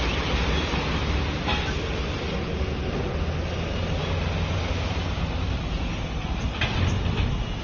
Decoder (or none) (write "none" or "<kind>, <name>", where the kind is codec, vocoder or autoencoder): none